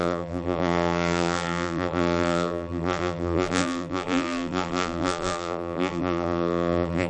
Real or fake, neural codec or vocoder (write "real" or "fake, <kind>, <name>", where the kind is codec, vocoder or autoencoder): fake, vocoder, BigVGAN v2